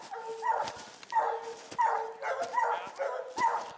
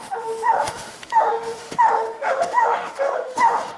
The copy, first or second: second